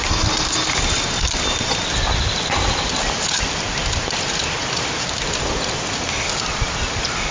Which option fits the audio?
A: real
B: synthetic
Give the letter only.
A